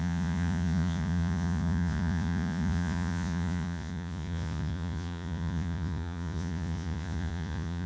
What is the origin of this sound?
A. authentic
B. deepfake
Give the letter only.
B